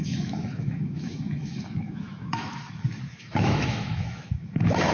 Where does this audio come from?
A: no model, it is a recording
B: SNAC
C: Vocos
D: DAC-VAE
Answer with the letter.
D